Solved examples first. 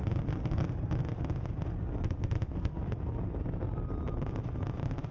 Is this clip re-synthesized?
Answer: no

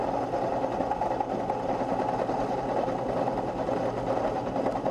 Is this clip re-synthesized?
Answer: no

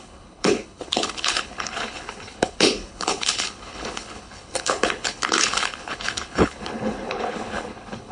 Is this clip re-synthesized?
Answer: yes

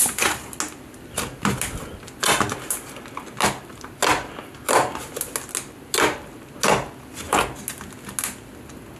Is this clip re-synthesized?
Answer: no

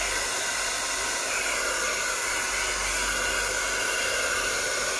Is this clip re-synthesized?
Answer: no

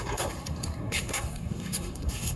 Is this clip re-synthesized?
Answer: yes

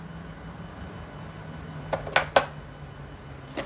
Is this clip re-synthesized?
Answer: no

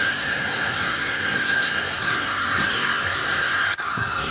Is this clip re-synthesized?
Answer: yes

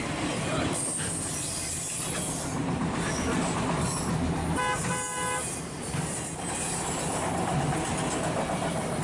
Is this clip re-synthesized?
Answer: no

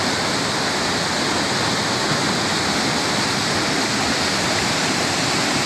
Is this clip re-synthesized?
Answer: no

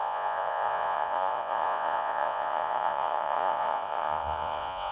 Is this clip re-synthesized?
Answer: yes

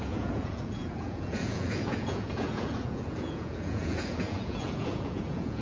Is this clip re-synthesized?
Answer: yes